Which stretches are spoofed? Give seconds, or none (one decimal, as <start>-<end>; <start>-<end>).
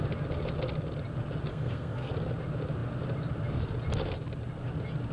1.5-2.1